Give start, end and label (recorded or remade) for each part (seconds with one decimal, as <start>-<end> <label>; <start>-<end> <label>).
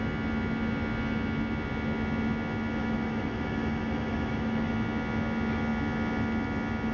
0.0-2.8 recorded; 2.8-4.7 remade; 4.7-6.9 recorded